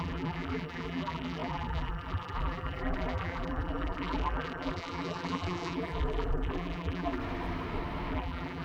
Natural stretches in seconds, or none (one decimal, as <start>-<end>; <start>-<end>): 7.2-8.1

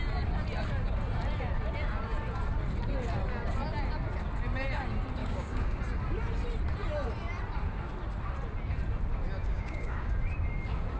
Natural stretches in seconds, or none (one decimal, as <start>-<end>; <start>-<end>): 0.0-5.2; 5.8-9.4; 10.1-11.0

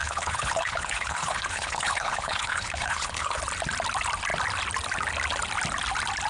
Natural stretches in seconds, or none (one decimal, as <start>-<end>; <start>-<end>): 3.4-6.3

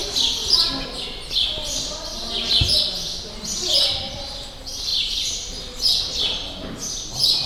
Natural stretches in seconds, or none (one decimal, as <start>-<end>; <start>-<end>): 0.0-4.0; 4.9-7.5

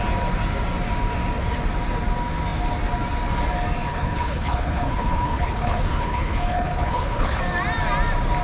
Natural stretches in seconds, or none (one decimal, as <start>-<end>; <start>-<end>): 0.0-3.9; 7.4-8.4

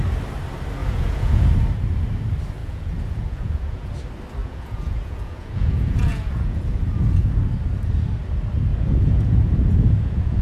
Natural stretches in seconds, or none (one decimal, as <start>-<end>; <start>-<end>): 0.0-0.8; 1.5-2.6; 3.9-4.4; 7.4-8.7

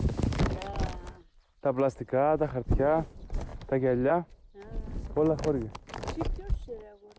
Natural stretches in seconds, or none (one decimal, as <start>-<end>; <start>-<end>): 0.0-7.2